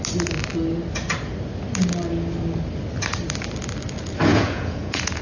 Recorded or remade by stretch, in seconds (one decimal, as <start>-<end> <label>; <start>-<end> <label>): 0.0-4.3 recorded; 4.3-5.2 remade